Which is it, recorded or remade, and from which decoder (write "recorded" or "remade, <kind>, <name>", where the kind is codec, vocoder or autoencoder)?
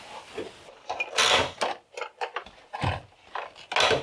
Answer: recorded